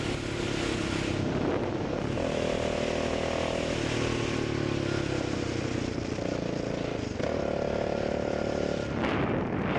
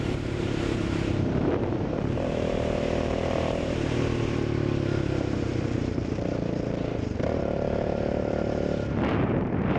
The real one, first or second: first